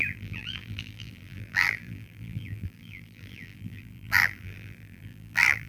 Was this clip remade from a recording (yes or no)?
yes